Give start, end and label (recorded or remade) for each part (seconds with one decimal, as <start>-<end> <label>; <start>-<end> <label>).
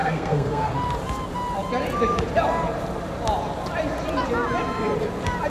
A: 0.0-0.7 remade; 0.7-5.5 recorded